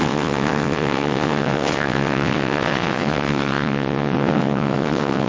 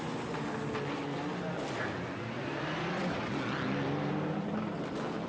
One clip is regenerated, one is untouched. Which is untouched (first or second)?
second